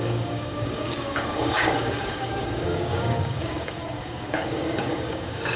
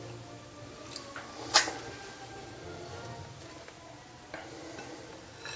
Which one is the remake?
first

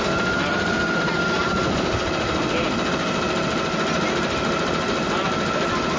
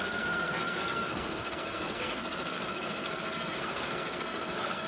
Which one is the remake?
second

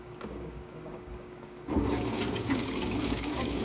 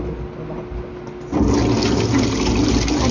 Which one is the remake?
first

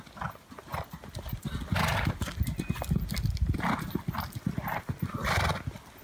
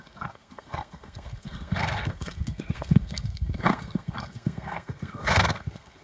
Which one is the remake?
second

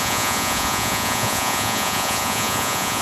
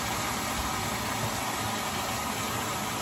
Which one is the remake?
first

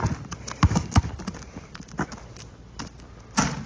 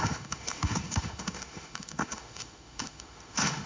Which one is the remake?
second